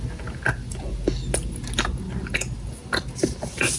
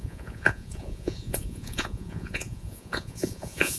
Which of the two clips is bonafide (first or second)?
first